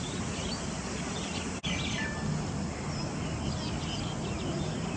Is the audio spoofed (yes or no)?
no